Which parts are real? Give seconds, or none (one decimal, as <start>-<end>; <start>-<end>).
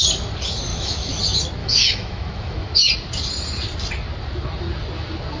0.0-0.7; 1.2-1.6; 2.9-5.4